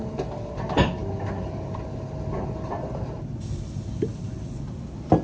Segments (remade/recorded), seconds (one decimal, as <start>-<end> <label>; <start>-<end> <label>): 0.0-5.2 recorded